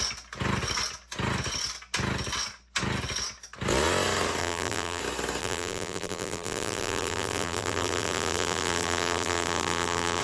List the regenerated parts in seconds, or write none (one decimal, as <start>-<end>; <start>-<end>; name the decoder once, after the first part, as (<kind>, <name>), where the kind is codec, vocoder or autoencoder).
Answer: 4.4-5.0 (vocoder, BigVGAN v2); 5.4-10.2